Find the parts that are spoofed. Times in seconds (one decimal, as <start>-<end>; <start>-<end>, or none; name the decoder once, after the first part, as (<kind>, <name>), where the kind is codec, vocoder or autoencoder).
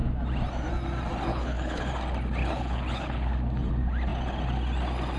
1.3-1.9 (codec, HILCodec); 2.4-3.3